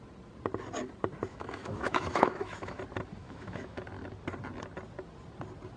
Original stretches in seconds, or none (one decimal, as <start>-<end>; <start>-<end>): 0.0-1.3; 2.8-3.2; 3.8-5.8